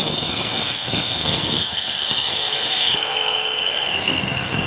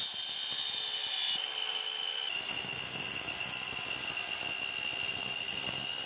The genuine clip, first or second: second